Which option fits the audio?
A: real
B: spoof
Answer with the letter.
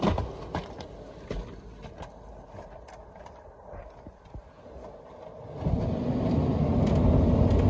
A